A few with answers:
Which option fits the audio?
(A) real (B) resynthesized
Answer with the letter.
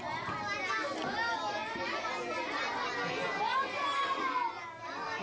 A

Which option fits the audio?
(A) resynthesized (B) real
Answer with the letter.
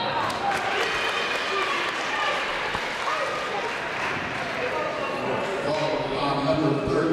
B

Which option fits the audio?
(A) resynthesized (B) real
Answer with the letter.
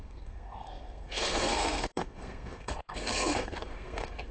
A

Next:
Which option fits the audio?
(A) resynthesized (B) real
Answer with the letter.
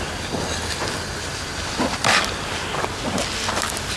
B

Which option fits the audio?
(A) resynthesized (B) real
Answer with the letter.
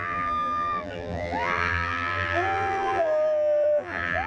A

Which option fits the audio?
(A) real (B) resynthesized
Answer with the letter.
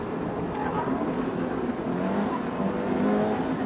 A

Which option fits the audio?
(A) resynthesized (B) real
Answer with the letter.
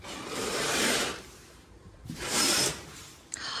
A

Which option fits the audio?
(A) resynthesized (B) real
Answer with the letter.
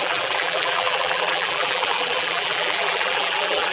A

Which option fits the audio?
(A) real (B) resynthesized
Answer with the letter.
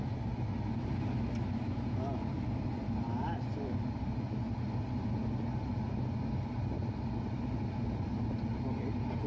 A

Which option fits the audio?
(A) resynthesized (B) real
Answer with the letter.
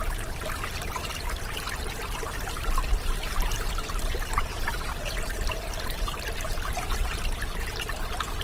B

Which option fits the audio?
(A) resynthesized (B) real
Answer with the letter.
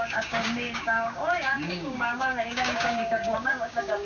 A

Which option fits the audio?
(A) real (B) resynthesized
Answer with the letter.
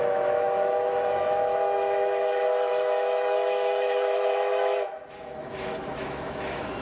B